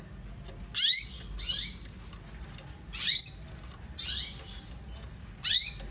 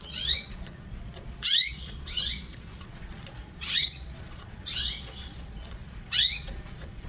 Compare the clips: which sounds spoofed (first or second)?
second